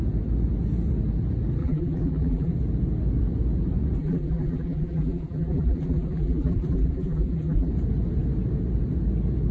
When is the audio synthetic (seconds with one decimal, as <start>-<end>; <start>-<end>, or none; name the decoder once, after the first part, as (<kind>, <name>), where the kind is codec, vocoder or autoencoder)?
1.6-2.5 (vocoder, BigVGAN v2); 4.0-7.7